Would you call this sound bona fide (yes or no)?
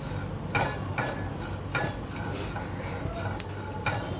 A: yes